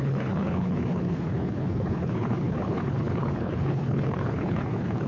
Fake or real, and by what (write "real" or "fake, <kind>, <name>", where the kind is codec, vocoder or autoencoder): fake, codec, HILCodec